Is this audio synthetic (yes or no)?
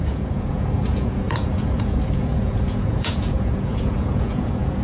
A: yes